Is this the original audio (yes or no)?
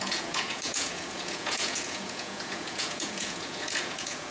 no